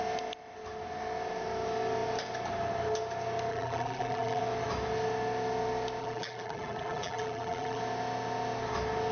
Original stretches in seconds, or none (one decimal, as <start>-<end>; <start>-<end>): 0.0-3.5; 4.4-6.0; 7.8-9.1